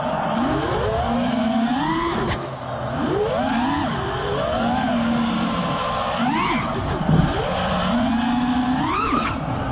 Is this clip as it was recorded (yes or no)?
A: yes